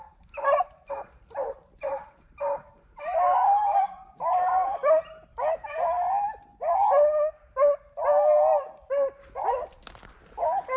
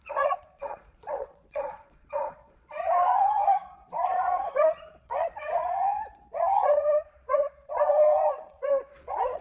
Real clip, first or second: first